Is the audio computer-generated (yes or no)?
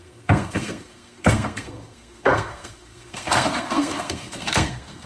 yes